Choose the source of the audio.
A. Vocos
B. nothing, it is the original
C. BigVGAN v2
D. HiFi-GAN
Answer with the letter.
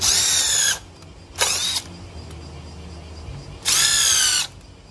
B